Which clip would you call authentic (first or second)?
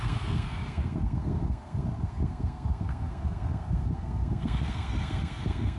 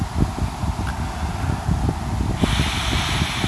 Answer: second